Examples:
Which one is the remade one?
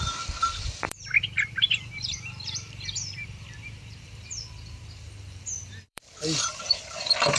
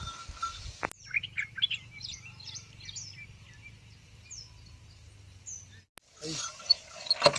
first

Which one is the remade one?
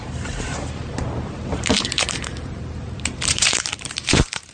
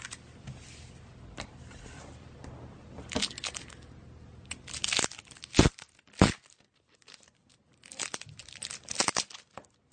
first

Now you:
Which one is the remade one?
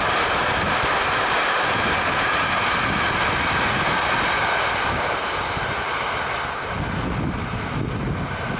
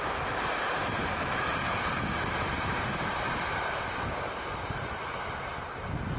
second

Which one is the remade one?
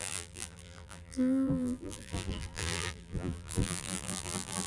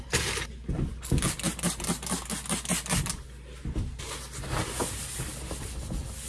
first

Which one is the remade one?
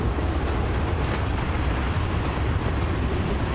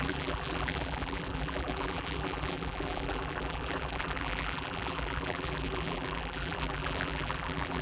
second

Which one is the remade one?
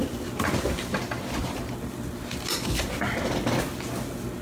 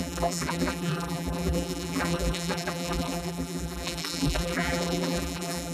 second